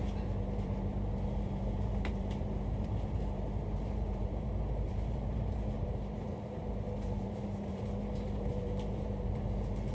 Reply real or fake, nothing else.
fake